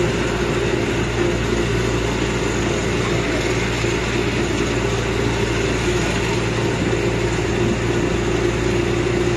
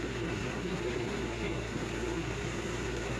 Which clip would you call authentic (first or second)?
first